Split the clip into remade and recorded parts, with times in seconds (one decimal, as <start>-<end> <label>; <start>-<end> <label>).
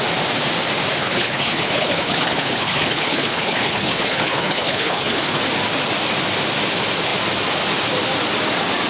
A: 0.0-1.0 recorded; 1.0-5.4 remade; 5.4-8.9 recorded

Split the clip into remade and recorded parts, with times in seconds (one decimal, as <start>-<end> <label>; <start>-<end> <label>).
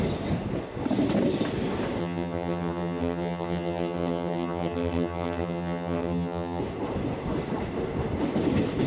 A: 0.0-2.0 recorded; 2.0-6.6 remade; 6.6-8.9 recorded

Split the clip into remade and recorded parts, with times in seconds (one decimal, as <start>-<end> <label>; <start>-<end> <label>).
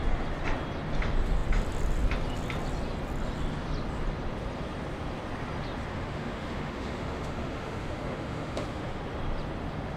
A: 0.0-5.9 recorded; 5.9-9.0 remade; 9.0-10.0 recorded